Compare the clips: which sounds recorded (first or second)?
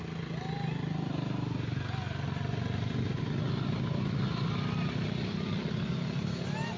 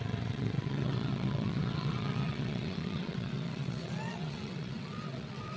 first